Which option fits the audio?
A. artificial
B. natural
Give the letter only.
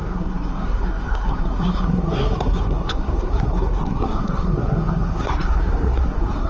A